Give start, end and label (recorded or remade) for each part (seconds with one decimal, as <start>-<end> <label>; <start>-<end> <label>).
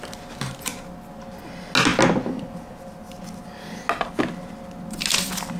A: 0.0-5.6 recorded